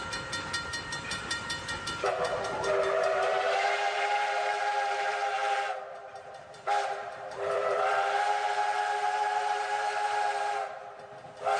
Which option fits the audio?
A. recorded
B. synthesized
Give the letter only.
B